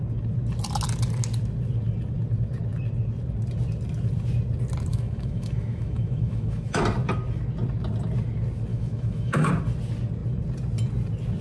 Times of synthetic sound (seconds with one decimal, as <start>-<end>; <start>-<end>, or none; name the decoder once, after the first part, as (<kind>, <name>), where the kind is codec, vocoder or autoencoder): 4.9-6.8 (autoencoder, DAC-VAE); 8.7-9.5